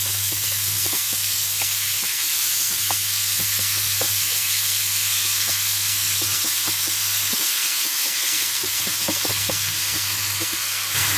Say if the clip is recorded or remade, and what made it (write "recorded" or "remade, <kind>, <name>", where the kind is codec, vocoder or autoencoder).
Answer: remade, codec, SNAC